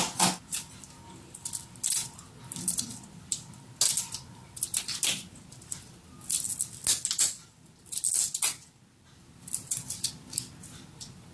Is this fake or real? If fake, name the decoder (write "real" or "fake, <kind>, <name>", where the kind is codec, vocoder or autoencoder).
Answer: real